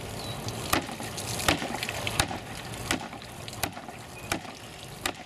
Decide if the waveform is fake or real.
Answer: real